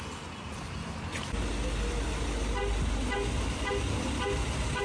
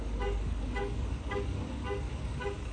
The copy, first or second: second